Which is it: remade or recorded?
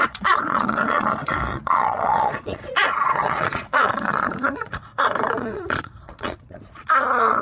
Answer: remade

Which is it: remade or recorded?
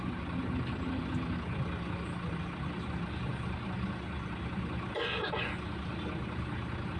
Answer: recorded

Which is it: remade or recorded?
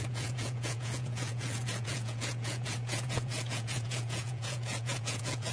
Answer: remade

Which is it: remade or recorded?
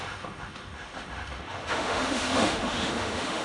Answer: remade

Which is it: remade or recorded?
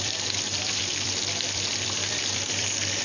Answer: remade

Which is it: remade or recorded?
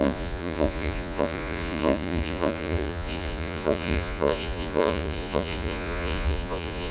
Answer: remade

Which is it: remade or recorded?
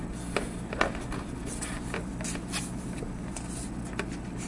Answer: recorded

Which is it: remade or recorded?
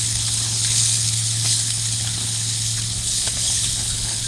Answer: remade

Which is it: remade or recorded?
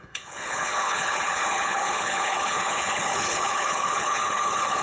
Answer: remade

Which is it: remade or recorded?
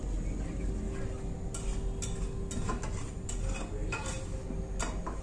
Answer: recorded